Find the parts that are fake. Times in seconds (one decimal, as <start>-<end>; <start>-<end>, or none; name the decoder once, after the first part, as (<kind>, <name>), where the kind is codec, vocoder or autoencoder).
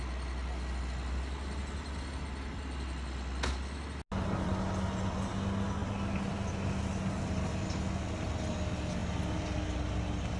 none